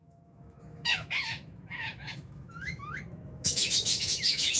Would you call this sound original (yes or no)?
no